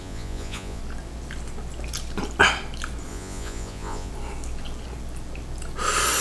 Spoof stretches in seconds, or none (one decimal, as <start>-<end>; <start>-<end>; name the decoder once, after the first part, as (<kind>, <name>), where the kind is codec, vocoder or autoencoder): 0.0-0.8 (vocoder, Vocos); 3.1-4.1

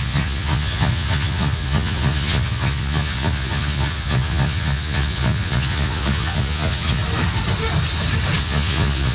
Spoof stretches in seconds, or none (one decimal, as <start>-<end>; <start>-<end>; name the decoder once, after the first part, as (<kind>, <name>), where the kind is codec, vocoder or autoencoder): 0.0-7.0 (vocoder, Vocos); 8.4-9.1